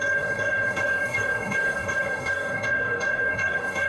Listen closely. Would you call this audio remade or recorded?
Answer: remade